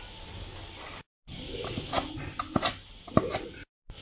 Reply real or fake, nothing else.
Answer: real